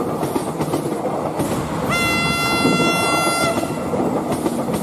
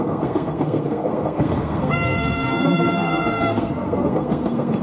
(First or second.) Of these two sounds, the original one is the first